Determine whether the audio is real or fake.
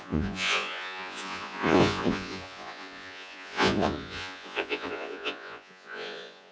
fake